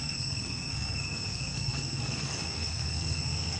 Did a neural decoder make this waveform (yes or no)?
yes